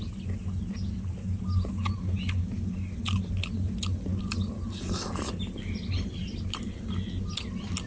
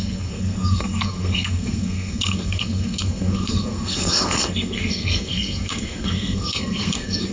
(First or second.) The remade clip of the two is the second